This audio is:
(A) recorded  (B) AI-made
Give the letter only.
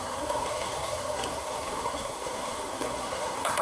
B